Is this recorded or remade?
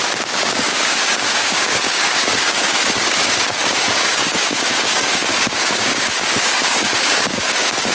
remade